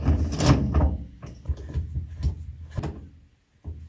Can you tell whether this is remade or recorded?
recorded